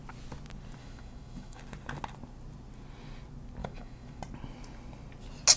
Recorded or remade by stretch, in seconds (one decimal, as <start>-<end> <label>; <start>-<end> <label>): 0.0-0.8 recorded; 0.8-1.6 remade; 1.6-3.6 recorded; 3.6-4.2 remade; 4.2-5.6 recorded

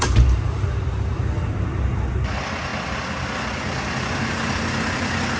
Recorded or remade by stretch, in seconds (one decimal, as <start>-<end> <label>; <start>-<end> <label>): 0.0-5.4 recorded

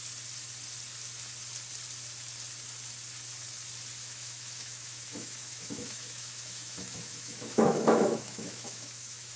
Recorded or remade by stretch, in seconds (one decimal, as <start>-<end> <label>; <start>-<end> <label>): 0.0-4.0 recorded; 4.0-9.4 remade

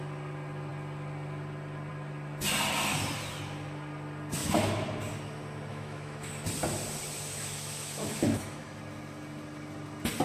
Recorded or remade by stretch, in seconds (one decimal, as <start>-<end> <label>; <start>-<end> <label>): 0.0-5.7 recorded; 5.7-6.3 remade; 6.3-7.3 recorded; 7.3-8.8 remade; 8.8-10.2 recorded